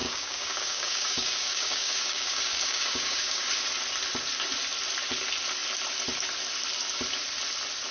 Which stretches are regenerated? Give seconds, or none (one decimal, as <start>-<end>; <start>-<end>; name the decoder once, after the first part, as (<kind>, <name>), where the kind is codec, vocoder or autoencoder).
0.0-3.5 (codec, DAC)